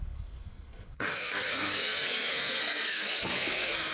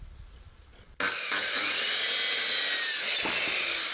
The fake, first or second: first